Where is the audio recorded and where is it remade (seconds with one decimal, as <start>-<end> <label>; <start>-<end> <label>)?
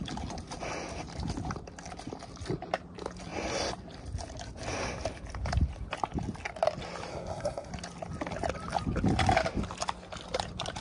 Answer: 0.0-7.1 recorded; 7.1-7.7 remade; 7.7-10.8 recorded